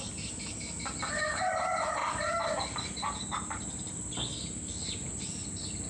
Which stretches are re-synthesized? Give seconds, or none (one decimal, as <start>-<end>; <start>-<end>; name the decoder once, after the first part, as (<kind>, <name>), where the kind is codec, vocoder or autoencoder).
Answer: none